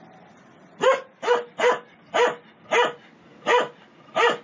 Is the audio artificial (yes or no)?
no